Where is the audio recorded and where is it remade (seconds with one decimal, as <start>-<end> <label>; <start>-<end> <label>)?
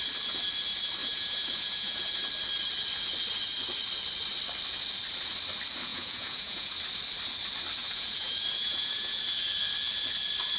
0.0-1.0 recorded; 1.0-2.0 remade; 2.0-5.9 recorded; 5.9-6.8 remade; 6.8-7.8 recorded; 7.8-9.2 remade; 9.2-10.6 recorded